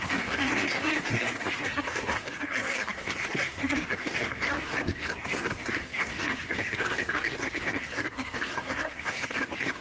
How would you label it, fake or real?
fake